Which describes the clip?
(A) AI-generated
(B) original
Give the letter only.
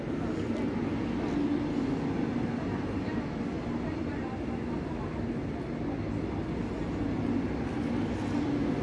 B